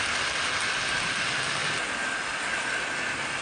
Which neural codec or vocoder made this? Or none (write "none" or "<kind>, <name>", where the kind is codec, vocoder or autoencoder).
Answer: none